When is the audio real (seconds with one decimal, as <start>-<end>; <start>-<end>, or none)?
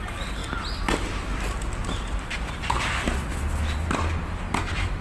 0.0-5.0